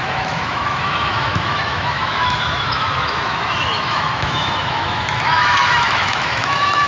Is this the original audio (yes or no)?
no